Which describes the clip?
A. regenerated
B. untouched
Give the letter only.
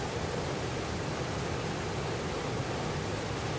B